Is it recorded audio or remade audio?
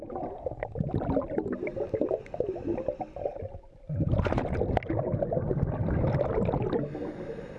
recorded